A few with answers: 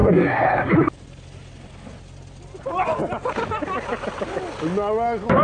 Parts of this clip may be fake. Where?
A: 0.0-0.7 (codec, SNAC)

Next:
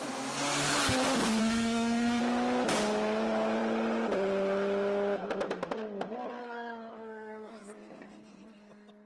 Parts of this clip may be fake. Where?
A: 1.4-2.2 (codec, SNAC); 6.4-7.5

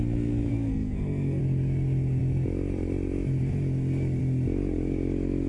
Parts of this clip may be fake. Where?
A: 0.5-1.4 (codec, SNAC)

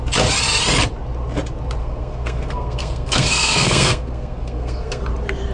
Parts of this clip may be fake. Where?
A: 1.8-5.0 (codec, SNAC)